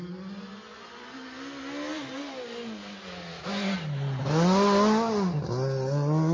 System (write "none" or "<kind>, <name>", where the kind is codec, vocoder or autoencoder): none